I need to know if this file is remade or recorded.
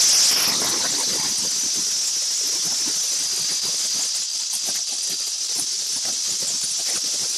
recorded